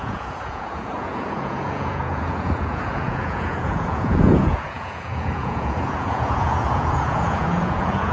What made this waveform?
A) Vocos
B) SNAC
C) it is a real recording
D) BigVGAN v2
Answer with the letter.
A